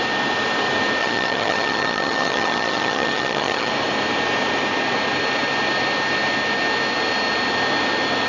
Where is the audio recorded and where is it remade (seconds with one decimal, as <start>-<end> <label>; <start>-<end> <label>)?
0.0-1.0 recorded; 1.0-3.7 remade; 3.7-8.3 recorded